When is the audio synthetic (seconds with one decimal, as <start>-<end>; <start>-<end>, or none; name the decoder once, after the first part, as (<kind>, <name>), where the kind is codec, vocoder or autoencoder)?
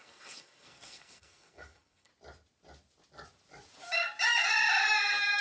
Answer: 0.0-2.1 (codec, SNAC)